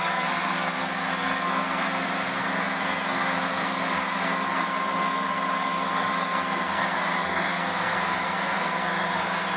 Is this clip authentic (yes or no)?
no